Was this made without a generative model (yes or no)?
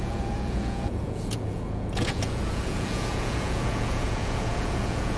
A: no